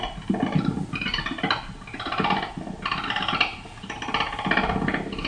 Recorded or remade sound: recorded